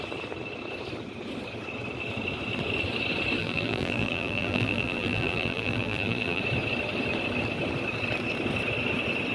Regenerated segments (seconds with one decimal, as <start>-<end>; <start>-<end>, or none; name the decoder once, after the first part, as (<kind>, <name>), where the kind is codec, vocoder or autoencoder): 3.4-6.4 (vocoder, BigVGAN v2)